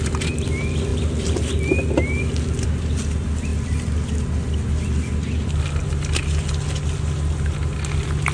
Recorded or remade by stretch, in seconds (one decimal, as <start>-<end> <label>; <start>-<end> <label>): 0.0-8.3 recorded